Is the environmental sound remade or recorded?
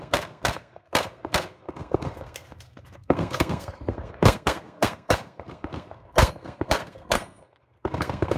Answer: remade